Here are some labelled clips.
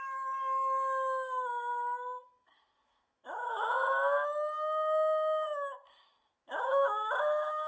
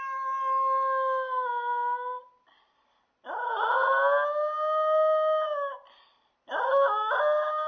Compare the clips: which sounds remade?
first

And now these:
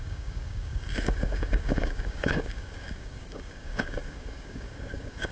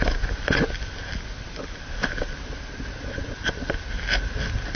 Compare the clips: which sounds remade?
first